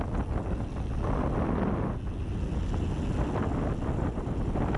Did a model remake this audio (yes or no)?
no